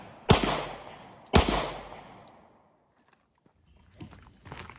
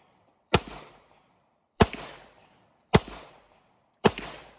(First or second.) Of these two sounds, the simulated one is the second